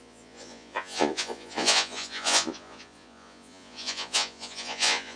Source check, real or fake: fake